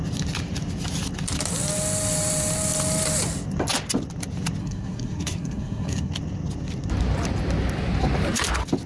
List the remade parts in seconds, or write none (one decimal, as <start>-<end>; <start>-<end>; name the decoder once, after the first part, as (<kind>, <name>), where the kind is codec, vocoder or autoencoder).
4.6-6.1 (codec, SNAC)